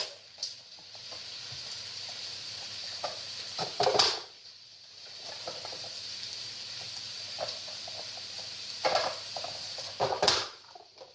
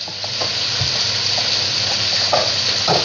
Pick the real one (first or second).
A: second